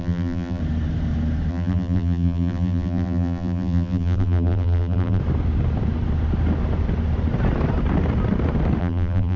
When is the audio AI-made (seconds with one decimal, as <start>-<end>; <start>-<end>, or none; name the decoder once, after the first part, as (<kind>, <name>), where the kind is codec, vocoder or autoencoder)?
0.0-0.6 (vocoder, BigVGAN v2); 1.5-5.2; 8.8-9.4